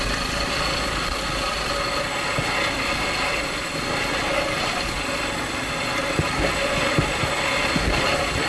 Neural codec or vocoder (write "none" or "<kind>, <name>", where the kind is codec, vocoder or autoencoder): none